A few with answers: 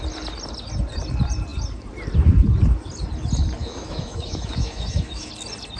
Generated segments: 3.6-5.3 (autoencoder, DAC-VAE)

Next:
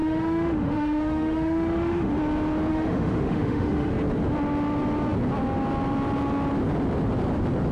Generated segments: 0.0-2.1 (autoencoder, DAC-VAE); 2.7-3.9

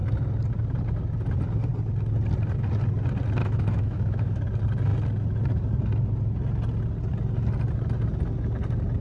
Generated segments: 3.4-4.4 (autoencoder, DAC-VAE)

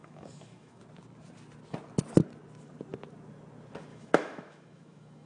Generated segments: 0.0-0.8 (autoencoder, DAC-VAE); 3.9-5.3

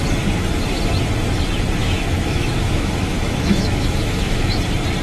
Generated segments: 1.8-4.6 (autoencoder, DAC-VAE)

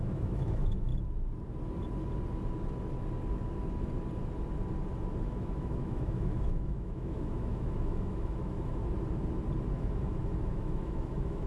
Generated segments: 0.0-0.9 (autoencoder, DAC-VAE); 5.2-8.8; 9.7-11.5